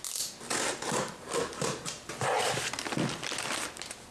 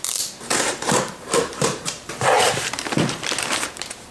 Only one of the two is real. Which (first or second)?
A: first